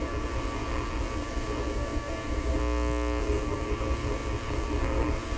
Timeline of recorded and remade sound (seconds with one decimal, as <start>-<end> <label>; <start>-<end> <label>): 0.0-2.6 remade; 2.6-3.2 recorded; 3.2-5.4 remade

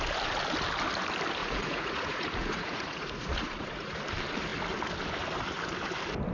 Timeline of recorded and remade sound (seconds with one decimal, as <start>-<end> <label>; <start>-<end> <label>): 0.0-1.4 recorded; 1.4-4.0 remade; 4.0-6.3 recorded

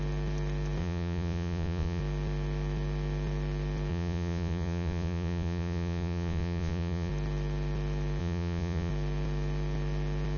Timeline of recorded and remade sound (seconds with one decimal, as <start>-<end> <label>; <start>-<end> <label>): 0.0-0.8 recorded; 0.8-2.0 remade; 2.0-3.9 recorded; 3.9-7.1 remade; 7.1-8.2 recorded; 8.2-8.9 remade; 8.9-10.4 recorded

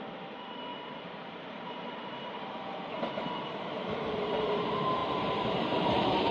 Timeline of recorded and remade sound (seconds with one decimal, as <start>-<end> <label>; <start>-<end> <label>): 0.0-6.3 remade

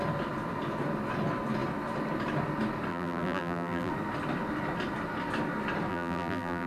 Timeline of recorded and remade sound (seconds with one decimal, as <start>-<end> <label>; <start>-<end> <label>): 0.0-2.9 recorded; 2.9-3.9 remade; 3.9-5.9 recorded; 5.9-6.7 remade

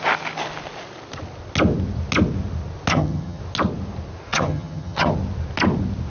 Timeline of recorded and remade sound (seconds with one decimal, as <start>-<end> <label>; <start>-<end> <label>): 0.0-2.9 recorded; 2.9-3.4 remade; 3.4-4.3 recorded; 4.3-5.1 remade; 5.1-6.1 recorded

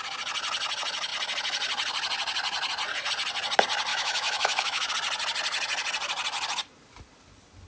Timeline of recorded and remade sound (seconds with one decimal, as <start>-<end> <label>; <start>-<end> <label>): 0.0-3.9 recorded; 3.9-4.9 remade; 4.9-7.7 recorded

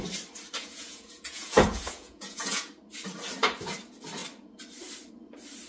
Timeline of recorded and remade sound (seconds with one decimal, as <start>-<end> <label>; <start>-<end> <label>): 0.0-0.6 recorded; 0.6-2.7 remade; 2.7-5.7 recorded